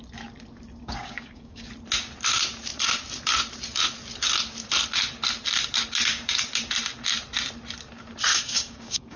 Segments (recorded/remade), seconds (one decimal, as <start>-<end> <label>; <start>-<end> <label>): 0.0-0.8 recorded; 0.8-1.7 remade; 1.7-8.3 recorded; 8.3-9.2 remade